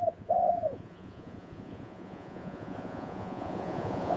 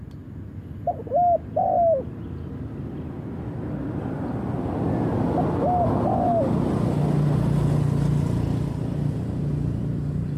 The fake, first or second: first